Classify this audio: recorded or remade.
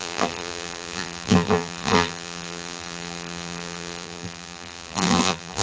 remade